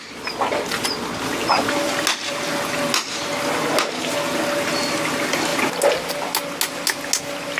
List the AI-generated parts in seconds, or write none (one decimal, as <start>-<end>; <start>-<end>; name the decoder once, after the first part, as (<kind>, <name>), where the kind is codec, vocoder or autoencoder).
none